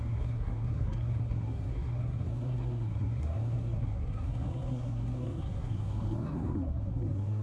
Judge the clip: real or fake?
fake